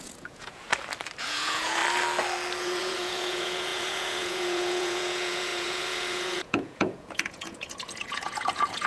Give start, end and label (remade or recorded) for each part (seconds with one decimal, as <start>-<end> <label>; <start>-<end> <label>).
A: 0.0-0.7 remade; 0.7-1.2 recorded; 1.2-1.8 remade; 1.8-2.6 recorded; 2.6-8.9 remade